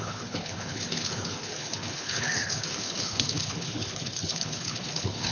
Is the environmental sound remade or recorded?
remade